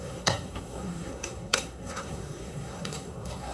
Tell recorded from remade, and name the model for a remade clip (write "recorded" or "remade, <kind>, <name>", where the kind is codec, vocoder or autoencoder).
remade, codec, SNAC